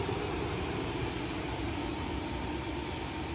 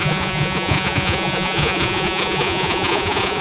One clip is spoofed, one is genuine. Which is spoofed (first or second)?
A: second